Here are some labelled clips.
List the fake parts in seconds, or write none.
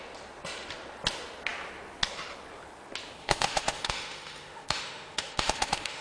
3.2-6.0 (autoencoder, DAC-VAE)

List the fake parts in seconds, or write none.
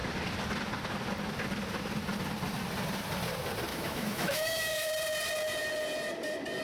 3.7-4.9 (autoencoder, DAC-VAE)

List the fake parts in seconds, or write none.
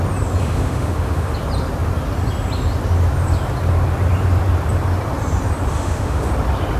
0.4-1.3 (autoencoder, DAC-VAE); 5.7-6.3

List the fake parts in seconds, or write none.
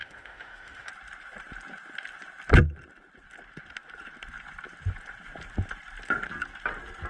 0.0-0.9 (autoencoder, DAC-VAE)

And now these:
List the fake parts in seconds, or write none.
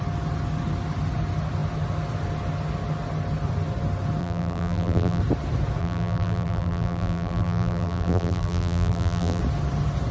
4.2-5.2 (vocoder, BigVGAN v2); 5.8-9.4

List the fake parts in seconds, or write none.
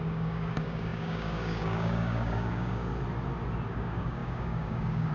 0.0-2.9 (codec, DAC); 3.7-5.1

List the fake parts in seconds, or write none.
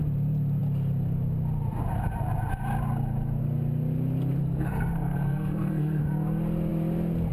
4.4-6.0 (codec, SNAC)